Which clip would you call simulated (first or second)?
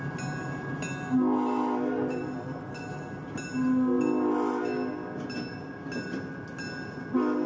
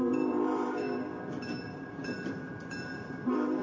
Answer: second